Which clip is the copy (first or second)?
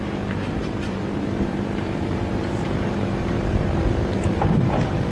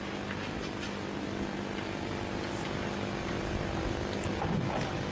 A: first